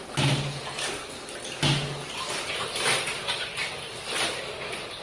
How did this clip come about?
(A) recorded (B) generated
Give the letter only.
A